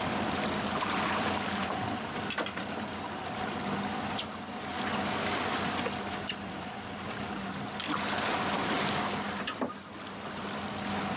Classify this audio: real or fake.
real